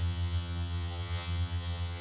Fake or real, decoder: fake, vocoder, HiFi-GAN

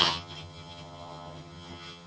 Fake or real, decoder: fake, vocoder, HiFi-GAN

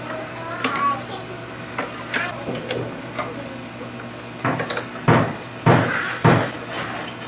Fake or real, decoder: real